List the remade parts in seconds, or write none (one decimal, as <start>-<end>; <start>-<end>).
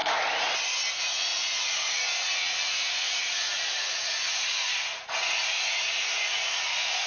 0.9-7.1